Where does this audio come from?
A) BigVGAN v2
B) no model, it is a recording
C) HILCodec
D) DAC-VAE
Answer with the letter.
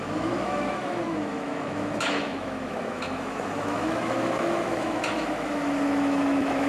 D